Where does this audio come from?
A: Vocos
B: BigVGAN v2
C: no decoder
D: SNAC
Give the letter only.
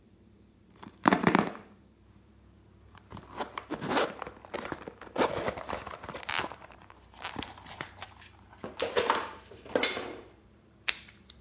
B